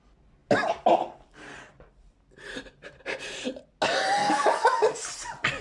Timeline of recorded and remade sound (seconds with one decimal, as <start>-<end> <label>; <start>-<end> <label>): 0.0-4.2 recorded; 4.2-4.9 remade; 4.9-5.6 recorded